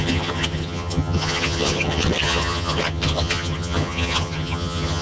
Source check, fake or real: fake